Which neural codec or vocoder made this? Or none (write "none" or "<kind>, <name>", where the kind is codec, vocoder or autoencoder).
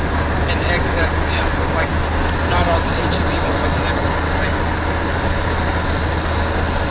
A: none